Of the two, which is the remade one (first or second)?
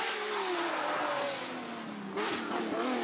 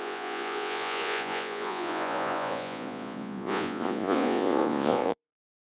second